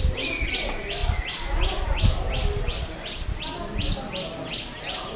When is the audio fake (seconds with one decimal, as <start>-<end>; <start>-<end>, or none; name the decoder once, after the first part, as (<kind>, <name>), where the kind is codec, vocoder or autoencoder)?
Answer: none